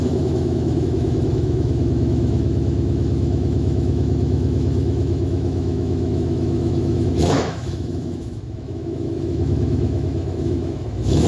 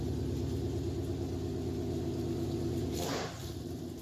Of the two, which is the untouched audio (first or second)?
second